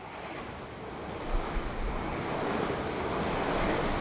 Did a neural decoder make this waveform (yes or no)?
no